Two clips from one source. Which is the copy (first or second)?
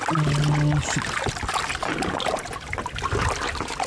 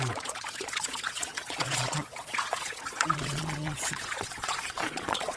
second